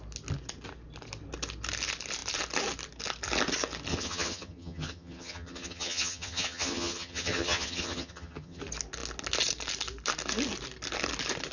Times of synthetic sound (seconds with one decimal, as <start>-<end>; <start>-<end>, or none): 3.9-8.6